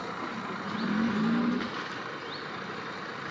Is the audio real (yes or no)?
yes